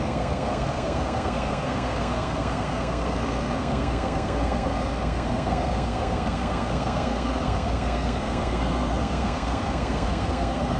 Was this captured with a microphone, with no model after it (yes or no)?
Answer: no